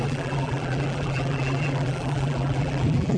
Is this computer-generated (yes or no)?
yes